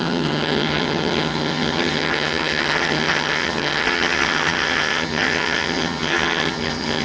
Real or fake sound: fake